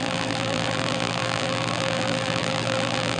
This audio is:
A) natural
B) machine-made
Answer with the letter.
B